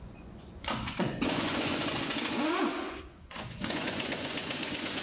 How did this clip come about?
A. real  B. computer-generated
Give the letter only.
B